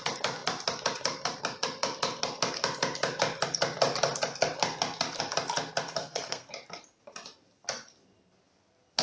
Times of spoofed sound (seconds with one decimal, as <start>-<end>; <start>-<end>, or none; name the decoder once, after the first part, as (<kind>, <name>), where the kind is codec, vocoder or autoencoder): 6.0-6.5 (codec, SNAC)